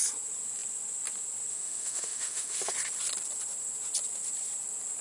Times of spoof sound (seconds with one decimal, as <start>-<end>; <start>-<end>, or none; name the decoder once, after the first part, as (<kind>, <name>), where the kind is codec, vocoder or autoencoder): 1.5-2.7 (autoencoder, DAC-VAE)